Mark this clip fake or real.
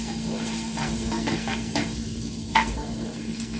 fake